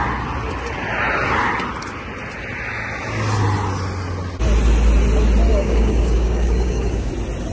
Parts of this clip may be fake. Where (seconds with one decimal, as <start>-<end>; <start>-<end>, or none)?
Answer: 5.5-7.1